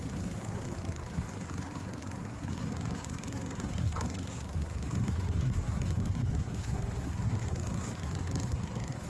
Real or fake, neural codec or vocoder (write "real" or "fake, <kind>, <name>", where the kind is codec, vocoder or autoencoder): fake, codec, SNAC